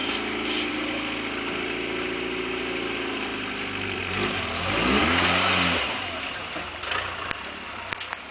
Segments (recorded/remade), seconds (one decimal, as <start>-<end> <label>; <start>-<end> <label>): 0.0-3.3 recorded; 3.3-4.0 remade; 4.0-8.3 recorded